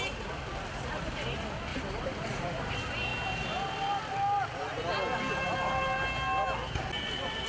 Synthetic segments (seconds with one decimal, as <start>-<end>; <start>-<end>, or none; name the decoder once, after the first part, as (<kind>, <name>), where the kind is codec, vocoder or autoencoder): 1.7-2.6 (vocoder, BigVGAN v2)